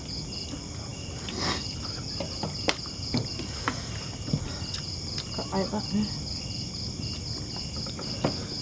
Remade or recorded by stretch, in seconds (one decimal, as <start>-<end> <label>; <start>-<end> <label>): 0.0-8.6 recorded